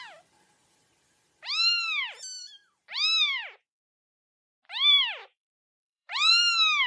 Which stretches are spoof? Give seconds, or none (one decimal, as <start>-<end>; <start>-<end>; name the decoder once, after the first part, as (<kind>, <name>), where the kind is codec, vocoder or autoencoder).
0.6-3.8 (vocoder, BigVGAN v2); 5.2-6.3